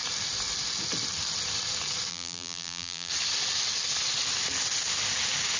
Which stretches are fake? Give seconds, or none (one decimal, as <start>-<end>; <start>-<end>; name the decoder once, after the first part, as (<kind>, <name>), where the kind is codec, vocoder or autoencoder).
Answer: 2.1-3.1 (vocoder, BigVGAN v2)